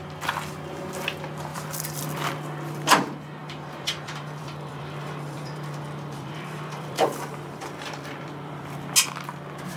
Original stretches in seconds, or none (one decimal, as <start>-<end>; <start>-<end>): 0.0-1.5; 2.3-3.4; 8.6-9.8